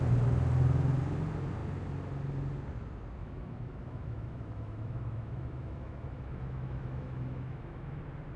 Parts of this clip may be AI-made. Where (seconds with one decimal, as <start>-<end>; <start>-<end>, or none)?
3.2-8.0